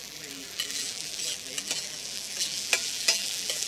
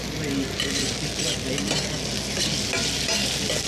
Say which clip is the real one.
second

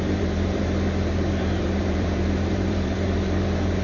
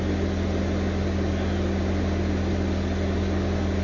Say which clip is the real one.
second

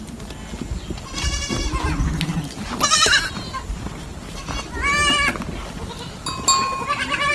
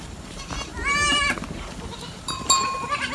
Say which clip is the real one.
first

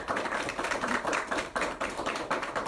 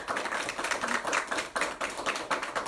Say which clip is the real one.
second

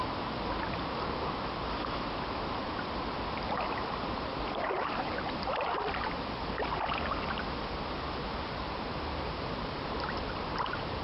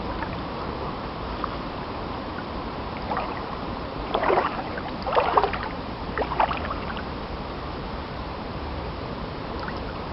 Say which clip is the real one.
first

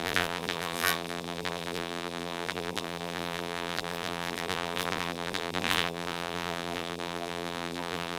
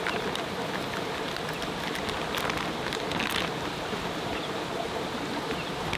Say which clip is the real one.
second